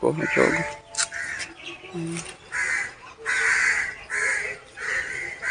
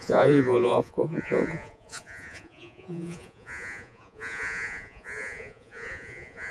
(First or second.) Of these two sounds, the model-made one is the second